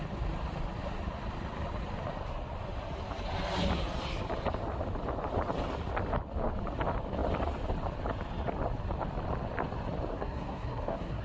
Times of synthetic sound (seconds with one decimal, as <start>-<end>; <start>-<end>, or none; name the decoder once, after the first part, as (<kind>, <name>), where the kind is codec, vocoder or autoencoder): 10.1-11.2 (codec, SNAC)